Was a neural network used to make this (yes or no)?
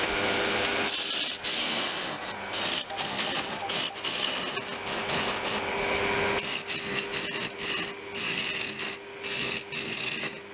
no